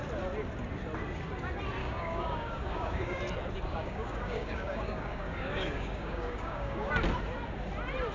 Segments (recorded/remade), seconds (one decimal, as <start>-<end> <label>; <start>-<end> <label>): 0.0-1.8 recorded; 1.8-3.2 remade; 3.2-3.7 recorded; 3.7-6.9 remade; 6.9-8.1 recorded